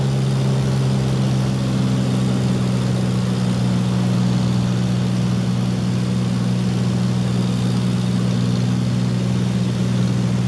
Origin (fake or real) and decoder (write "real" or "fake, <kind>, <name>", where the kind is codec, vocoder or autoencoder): real